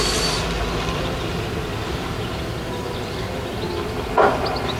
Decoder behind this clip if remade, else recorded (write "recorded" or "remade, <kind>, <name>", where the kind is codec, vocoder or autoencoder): recorded